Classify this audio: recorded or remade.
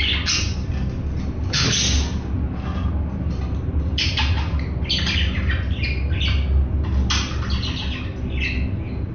recorded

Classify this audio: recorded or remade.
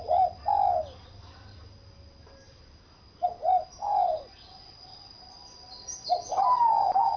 recorded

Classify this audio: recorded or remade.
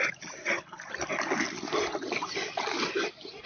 recorded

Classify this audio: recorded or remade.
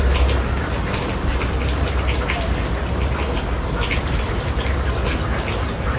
recorded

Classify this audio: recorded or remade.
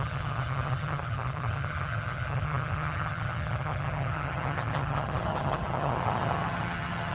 remade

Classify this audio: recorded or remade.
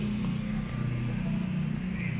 recorded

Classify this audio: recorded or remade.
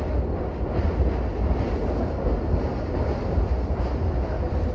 recorded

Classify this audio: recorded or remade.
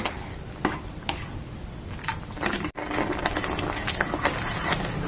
recorded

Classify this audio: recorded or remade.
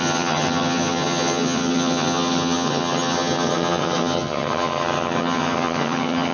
remade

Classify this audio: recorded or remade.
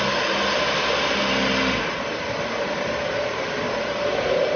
recorded